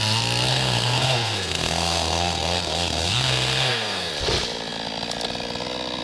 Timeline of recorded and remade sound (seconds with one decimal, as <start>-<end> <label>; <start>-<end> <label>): 0.0-0.5 recorded; 0.5-4.1 remade; 4.1-6.0 recorded